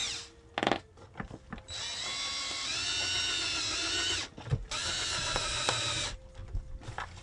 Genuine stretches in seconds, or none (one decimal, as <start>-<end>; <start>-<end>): 0.0-7.2